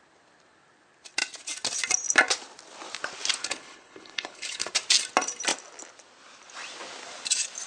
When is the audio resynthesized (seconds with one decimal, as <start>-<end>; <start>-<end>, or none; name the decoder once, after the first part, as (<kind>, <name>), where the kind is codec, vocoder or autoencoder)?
3.4-4.7 (codec, HILCodec)